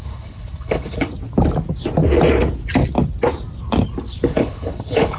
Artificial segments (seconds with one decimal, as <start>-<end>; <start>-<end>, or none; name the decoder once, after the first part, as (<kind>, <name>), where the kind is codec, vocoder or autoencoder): 0.0-1.1 (codec, HILCodec); 4.2-5.2